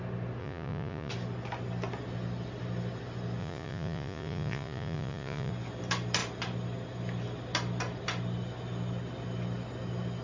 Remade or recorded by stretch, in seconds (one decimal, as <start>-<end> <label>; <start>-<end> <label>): 0.0-0.4 recorded; 0.4-1.1 remade; 1.1-3.4 recorded; 3.4-5.5 remade; 5.5-10.2 recorded